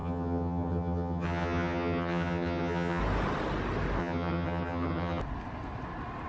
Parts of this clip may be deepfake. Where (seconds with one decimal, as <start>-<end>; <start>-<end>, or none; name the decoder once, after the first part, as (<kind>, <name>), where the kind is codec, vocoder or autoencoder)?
0.0-3.0 (vocoder, HiFi-GAN); 4.0-5.2